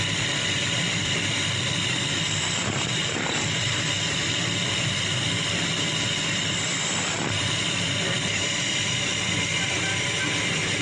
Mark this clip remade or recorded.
remade